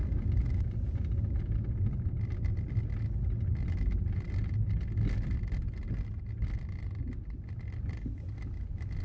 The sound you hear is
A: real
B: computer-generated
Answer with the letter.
A